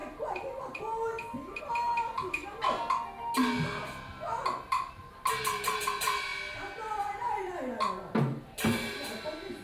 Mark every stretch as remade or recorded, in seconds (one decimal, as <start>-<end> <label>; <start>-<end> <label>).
0.0-9.6 recorded